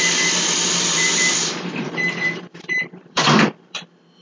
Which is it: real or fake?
fake